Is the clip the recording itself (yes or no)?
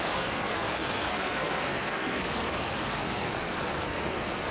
no